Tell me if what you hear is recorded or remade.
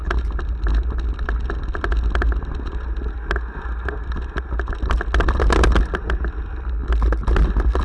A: recorded